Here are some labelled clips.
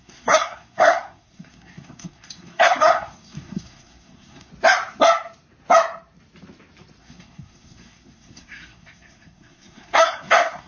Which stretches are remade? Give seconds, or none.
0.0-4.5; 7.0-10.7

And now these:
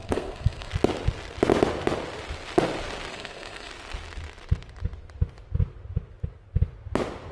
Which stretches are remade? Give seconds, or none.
0.0-0.7; 3.1-3.7

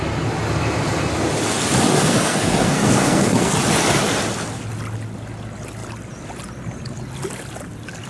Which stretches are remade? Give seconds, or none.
1.9-3.5

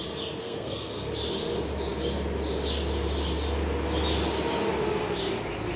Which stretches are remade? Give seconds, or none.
0.4-1.1

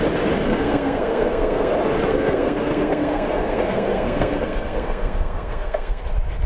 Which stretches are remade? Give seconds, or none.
0.5-1.7; 2.1-6.0

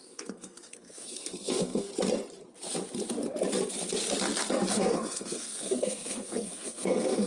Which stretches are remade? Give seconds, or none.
0.0-1.9; 4.7-7.3

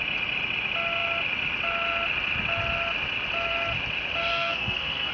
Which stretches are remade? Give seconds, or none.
4.3-5.1

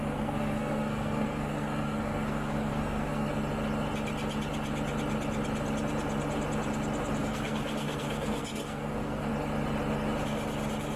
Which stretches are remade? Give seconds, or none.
0.0-3.3; 7.2-9.3